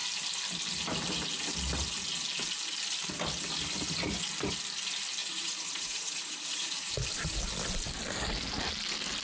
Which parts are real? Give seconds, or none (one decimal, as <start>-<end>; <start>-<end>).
0.0-5.2; 6.9-9.2